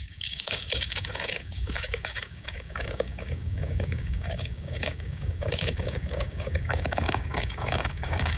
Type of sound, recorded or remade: remade